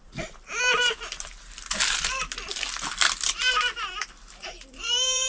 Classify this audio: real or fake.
fake